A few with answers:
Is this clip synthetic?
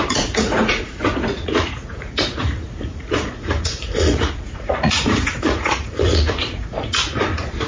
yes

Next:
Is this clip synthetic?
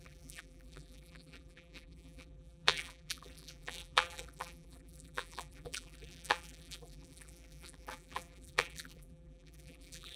yes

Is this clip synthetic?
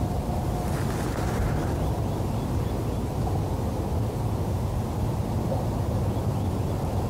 no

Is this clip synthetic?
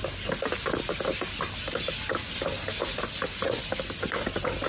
no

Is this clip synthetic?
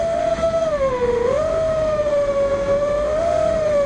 yes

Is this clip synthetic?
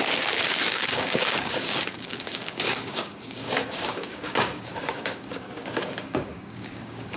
yes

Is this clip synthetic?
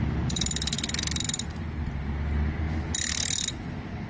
no